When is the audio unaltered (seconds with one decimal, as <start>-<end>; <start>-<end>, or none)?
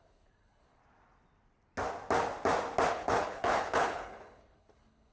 0.8-2.9